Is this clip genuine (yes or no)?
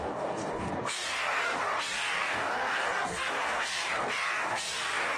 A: no